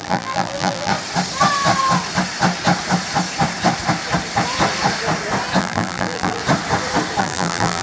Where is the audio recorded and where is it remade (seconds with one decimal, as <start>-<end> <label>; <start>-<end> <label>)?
0.0-0.9 remade; 0.9-5.6 recorded; 5.6-6.4 remade; 6.4-7.2 recorded; 7.2-7.8 remade